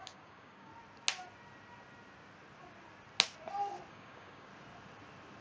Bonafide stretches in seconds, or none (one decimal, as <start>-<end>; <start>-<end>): 0.7-3.9; 4.5-5.4